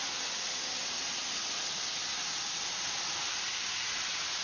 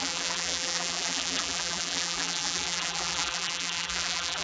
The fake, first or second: second